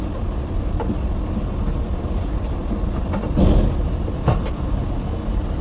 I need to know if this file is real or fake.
real